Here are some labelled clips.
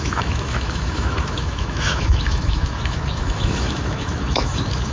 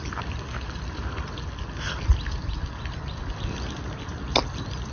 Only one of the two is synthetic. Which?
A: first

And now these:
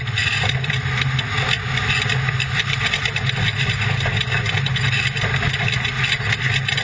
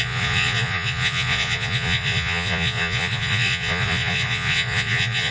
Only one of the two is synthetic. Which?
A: second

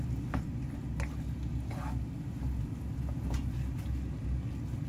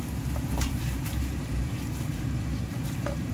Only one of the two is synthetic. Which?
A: second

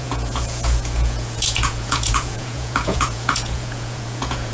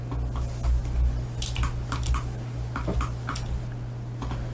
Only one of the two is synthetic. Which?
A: first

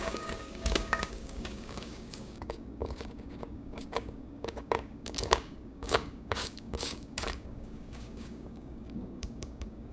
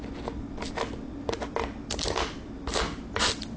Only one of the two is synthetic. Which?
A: first